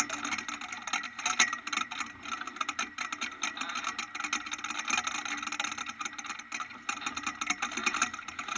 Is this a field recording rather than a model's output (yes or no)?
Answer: yes